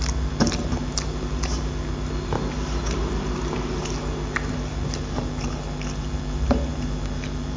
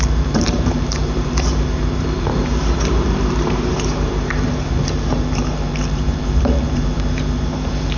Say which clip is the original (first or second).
first